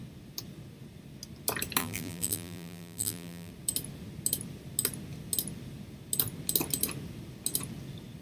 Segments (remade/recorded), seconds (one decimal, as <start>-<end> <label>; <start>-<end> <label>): 0.0-1.8 recorded; 1.8-3.5 remade; 3.5-8.2 recorded